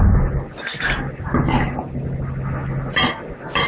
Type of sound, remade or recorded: recorded